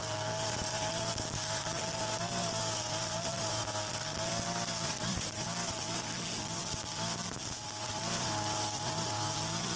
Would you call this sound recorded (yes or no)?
yes